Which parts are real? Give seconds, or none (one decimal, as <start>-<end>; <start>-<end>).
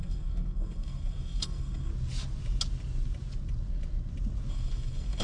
1.9-4.5